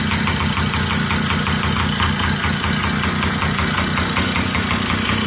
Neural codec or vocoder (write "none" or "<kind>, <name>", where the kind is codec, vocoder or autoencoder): none